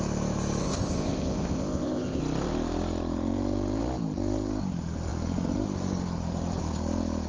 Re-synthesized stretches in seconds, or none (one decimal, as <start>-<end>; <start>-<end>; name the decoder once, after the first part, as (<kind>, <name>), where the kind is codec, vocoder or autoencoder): 0.6-2.2 (codec, ZipCodec)

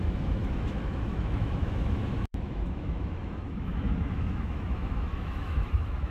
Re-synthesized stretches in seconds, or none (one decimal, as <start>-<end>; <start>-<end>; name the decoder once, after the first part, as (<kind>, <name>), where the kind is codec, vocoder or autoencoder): 0.0-6.1 (autoencoder, DAC-VAE)

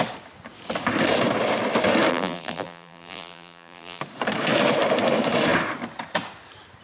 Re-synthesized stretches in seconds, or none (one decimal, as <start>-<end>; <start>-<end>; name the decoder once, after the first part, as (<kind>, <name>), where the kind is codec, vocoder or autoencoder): 2.1-4.0 (vocoder, BigVGAN v2)